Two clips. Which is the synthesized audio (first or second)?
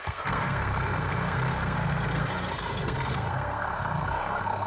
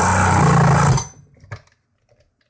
first